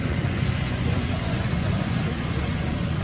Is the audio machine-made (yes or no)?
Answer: yes